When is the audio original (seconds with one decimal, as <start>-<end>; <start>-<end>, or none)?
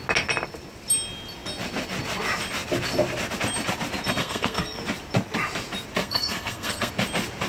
0.0-4.2; 4.8-6.0; 6.9-7.5